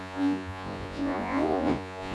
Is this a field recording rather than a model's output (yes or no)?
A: no